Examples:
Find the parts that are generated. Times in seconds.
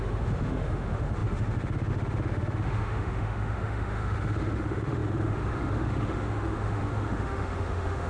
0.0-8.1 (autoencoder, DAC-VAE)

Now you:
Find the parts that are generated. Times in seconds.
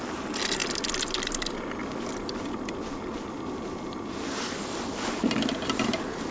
none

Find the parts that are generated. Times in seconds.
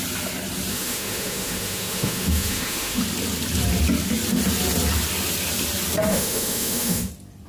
0.7-3.0 (autoencoder, DAC-VAE); 6.1-7.1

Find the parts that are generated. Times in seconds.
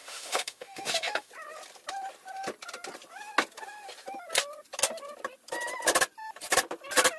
0.0-1.3 (autoencoder, DAC-VAE)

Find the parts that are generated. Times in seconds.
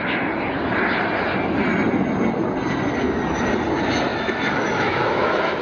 4.1-5.6 (autoencoder, DAC-VAE)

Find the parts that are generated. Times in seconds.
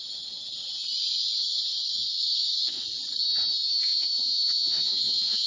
2.0-2.8 (autoencoder, DAC-VAE); 3.5-5.5